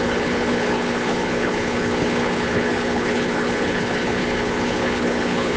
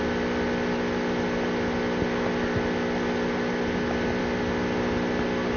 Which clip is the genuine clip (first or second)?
second